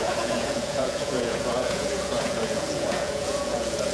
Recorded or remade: remade